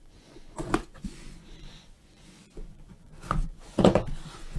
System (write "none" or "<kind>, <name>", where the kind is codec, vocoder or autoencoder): vocoder, Vocos